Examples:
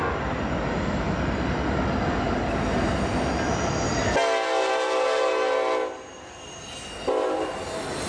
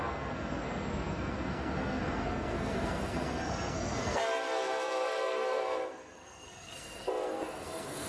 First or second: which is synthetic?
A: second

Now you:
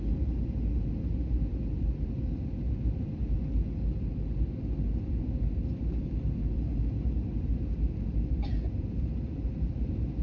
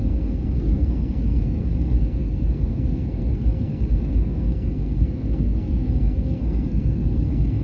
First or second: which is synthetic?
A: second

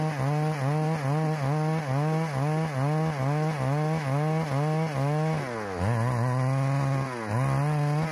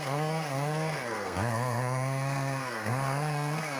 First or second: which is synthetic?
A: second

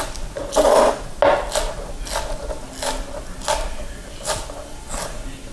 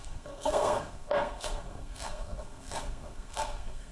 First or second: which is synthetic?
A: second